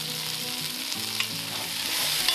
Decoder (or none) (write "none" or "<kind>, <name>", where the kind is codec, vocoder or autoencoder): none